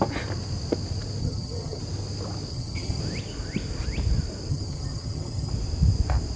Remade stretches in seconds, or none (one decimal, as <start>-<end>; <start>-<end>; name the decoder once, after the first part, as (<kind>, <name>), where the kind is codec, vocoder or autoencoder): 1.2-1.8 (vocoder, HiFi-GAN); 2.5-3.0; 4.5-5.5